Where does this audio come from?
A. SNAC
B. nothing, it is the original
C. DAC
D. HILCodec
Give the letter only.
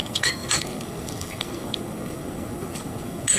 A